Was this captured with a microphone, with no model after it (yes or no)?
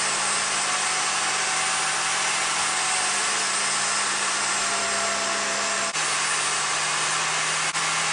yes